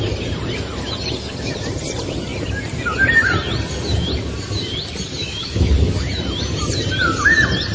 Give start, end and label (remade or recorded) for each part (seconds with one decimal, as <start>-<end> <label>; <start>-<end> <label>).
0.0-5.2 recorded; 5.2-5.7 remade; 5.7-7.7 recorded